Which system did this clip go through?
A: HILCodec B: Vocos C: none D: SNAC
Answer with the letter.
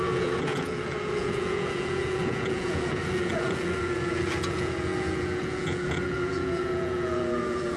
B